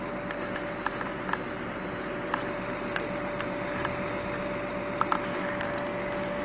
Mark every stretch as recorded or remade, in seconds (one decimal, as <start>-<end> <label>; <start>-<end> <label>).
0.0-5.3 recorded; 5.3-6.4 remade